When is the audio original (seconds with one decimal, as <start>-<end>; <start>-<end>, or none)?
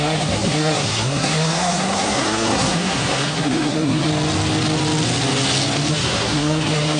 4.1-5.9